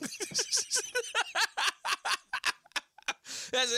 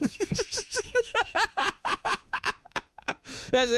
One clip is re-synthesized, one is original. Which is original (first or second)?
first